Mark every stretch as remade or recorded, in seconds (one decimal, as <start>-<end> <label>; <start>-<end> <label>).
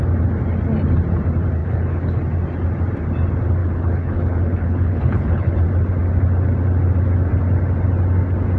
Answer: 0.0-1.6 recorded; 1.6-2.2 remade; 2.2-3.6 recorded; 3.6-5.5 remade; 5.5-8.6 recorded